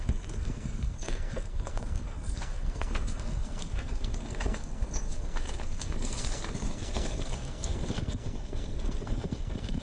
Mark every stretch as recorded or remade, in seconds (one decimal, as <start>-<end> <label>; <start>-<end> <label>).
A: 0.0-9.8 remade

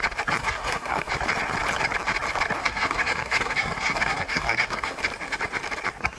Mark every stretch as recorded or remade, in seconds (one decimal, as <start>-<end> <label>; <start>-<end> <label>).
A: 0.0-0.4 recorded; 0.4-1.1 remade; 1.1-2.6 recorded; 2.6-5.0 remade; 5.0-6.2 recorded

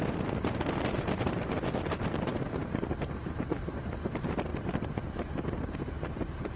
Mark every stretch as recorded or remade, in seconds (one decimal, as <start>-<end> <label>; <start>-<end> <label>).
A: 0.0-4.5 remade; 4.5-5.5 recorded; 5.5-6.6 remade

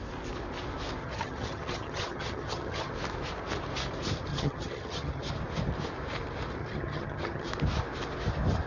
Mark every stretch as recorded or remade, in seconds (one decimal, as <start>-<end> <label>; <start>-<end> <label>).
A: 0.0-1.0 recorded; 1.0-2.9 remade; 2.9-4.3 recorded; 4.3-5.3 remade; 5.3-6.6 recorded; 6.6-7.5 remade; 7.5-8.7 recorded

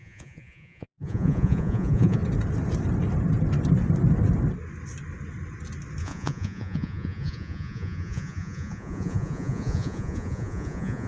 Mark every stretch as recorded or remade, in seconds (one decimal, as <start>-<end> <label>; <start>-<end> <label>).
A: 0.0-2.2 remade; 2.2-6.0 recorded; 6.0-11.1 remade

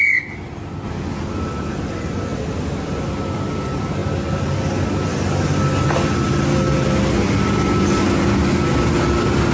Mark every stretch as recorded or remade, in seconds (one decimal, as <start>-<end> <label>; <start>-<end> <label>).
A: 0.0-9.5 recorded